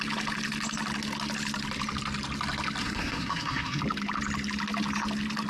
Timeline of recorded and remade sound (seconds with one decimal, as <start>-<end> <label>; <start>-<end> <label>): 0.0-2.8 recorded; 2.8-3.8 remade; 3.8-5.5 recorded